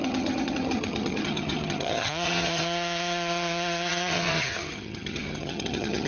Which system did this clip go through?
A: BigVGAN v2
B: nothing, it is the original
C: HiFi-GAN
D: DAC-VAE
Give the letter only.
C